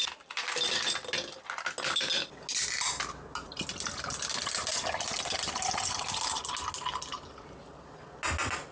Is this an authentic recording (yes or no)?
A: yes